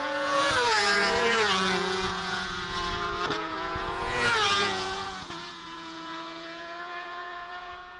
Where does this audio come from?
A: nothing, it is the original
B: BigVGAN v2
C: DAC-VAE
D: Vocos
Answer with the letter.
D